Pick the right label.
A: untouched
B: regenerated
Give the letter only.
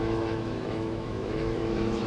B